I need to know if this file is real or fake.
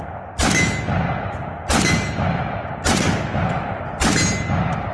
real